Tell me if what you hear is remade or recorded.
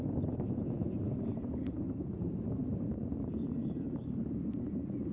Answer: remade